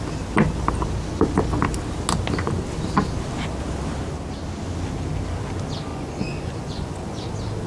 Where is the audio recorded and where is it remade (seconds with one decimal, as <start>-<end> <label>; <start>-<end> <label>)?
0.0-5.9 recorded; 5.9-7.3 remade; 7.3-7.7 recorded